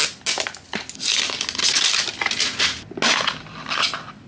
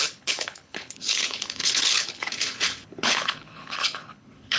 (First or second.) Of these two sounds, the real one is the first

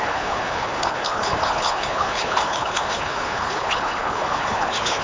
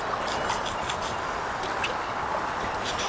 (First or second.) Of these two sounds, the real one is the second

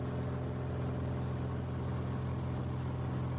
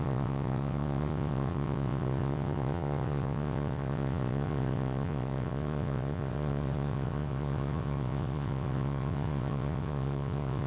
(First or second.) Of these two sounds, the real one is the first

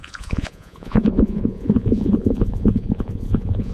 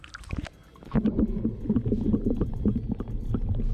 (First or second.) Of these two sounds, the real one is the second